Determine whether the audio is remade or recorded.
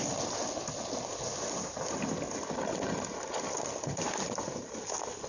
recorded